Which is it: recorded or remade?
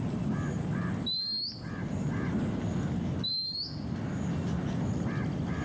recorded